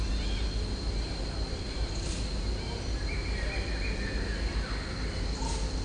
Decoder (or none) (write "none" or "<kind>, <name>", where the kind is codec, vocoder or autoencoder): none